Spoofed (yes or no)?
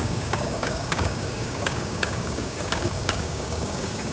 yes